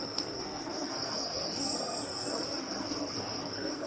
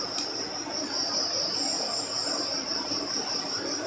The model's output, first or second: first